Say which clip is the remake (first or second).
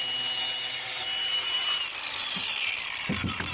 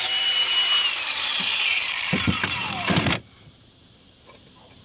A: second